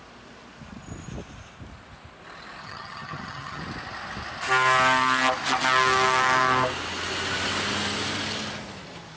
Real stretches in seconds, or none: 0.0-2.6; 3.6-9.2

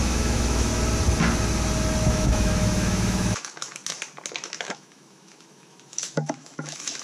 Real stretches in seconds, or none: 0.7-2.1; 3.8-4.3